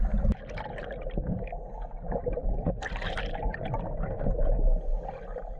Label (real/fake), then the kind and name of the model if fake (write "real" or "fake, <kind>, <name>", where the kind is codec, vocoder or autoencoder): real